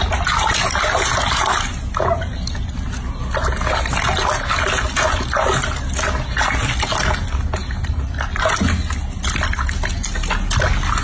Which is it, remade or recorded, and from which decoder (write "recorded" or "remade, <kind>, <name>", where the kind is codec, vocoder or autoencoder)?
recorded